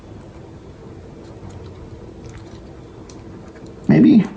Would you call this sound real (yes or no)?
yes